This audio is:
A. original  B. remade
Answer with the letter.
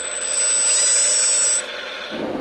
A